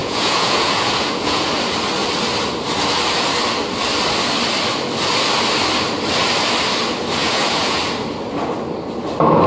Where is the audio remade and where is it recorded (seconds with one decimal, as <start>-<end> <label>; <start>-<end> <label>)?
0.0-1.5 remade; 1.5-7.2 recorded; 7.2-7.8 remade; 7.8-9.5 recorded